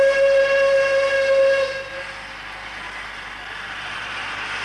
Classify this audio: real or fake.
real